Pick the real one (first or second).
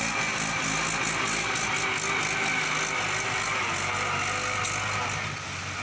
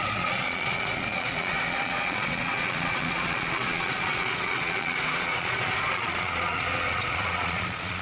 first